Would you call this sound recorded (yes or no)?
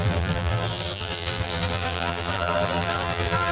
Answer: no